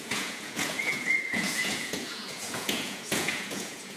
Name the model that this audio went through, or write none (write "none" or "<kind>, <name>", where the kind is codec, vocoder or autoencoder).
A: vocoder, Vocos